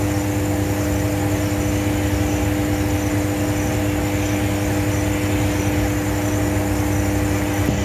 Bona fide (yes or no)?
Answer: yes